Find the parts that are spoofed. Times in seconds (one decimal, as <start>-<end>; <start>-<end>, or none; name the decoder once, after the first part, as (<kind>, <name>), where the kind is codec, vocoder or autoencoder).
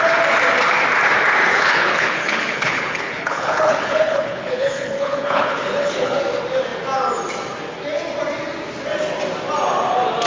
1.5-6.2 (codec, HILCodec)